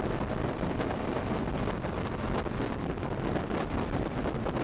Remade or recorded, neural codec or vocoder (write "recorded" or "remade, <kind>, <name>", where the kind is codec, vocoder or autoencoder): recorded